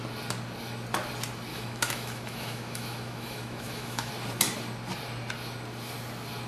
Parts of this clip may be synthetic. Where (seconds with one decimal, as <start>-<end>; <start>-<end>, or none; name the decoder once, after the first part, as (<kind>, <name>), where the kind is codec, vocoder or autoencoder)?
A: 1.5-4.1 (autoencoder, DAC-VAE)